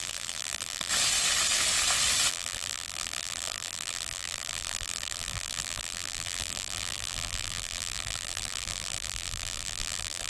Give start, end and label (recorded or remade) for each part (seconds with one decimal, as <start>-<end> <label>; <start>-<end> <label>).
0.0-0.9 remade; 0.9-2.3 recorded; 2.3-10.3 remade